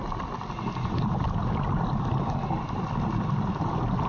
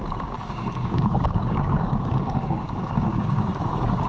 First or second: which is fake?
second